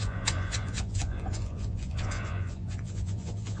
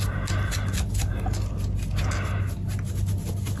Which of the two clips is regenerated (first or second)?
first